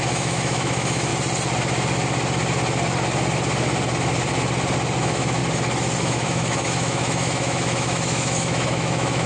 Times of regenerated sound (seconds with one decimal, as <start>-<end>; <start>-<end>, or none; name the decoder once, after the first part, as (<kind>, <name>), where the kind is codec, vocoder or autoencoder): 0.0-1.1 (autoencoder, DAC-VAE); 5.0-5.4; 6.0-9.3